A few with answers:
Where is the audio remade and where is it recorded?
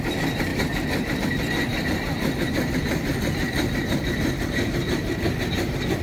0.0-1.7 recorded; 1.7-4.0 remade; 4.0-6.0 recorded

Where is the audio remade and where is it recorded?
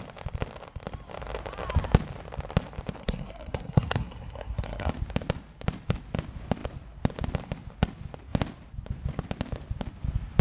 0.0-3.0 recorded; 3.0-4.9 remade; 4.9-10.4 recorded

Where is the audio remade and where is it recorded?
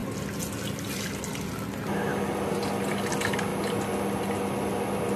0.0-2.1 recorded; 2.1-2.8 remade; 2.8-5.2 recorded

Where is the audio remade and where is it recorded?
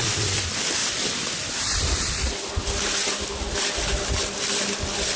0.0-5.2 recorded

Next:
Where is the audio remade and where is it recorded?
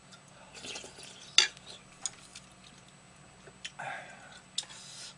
0.0-5.2 recorded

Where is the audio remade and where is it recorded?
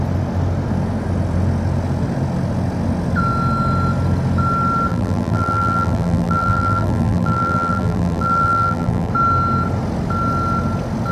0.0-4.9 recorded; 4.9-9.1 remade; 9.1-11.1 recorded